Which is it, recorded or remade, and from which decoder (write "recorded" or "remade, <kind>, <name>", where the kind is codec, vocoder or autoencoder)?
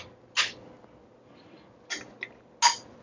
recorded